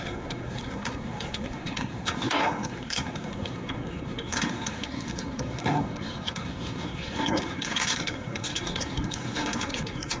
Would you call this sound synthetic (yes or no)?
yes